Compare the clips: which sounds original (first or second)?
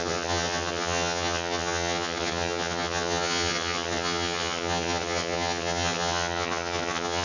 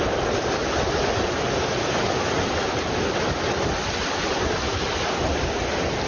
second